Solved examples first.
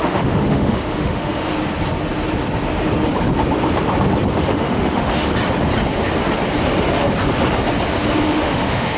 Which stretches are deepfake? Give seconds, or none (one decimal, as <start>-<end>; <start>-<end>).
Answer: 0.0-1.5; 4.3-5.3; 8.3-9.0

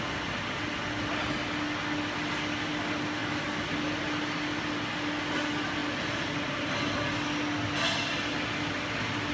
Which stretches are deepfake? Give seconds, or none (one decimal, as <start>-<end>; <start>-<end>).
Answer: none

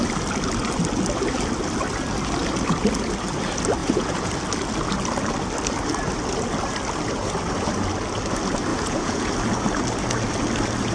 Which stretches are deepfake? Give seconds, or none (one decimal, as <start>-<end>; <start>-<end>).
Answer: 3.8-4.3; 8.7-9.3

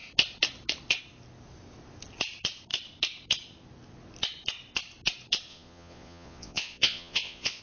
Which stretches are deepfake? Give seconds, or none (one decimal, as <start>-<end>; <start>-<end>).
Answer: 5.5-7.6